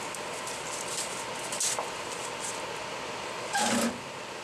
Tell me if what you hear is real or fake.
real